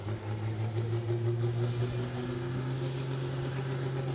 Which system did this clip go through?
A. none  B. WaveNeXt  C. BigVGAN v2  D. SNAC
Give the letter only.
A